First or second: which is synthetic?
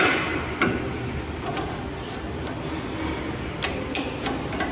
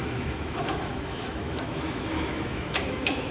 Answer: second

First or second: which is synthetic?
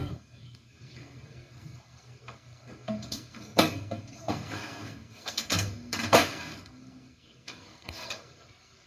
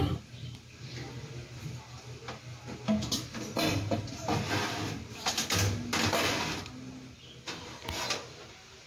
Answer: first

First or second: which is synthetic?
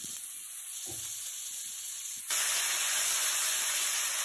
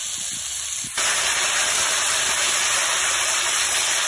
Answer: first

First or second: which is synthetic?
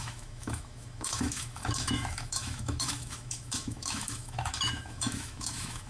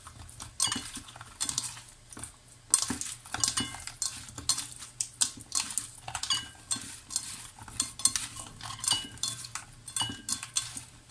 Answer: first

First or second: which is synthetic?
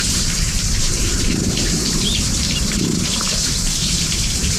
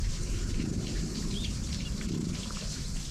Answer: first